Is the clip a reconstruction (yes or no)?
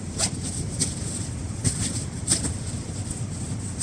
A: no